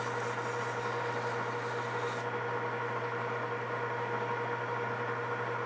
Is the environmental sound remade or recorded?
recorded